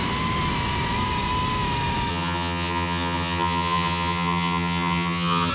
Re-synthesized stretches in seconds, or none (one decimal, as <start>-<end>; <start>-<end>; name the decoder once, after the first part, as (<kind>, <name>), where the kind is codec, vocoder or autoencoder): 2.1-5.5 (vocoder, HiFi-GAN)